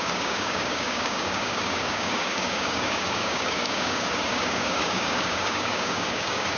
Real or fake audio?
fake